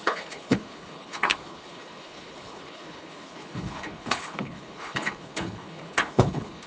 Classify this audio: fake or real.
fake